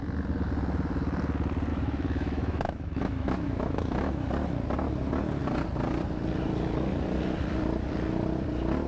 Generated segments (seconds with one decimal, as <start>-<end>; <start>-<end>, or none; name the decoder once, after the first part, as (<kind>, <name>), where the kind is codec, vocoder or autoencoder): 1.7-4.3 (autoencoder, DAC-VAE)